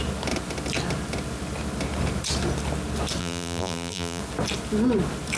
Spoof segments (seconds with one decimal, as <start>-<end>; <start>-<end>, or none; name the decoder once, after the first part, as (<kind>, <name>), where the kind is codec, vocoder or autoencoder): 3.2-4.2 (vocoder, BigVGAN v2)